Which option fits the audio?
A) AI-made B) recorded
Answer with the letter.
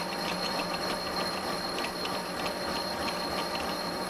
B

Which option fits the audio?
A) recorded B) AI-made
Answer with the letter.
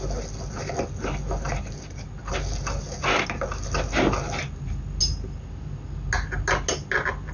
A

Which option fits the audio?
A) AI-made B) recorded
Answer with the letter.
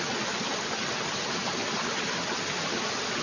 B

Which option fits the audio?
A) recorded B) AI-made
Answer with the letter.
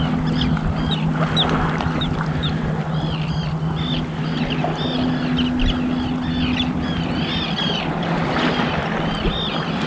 A